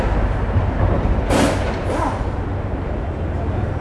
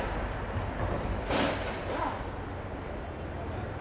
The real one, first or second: second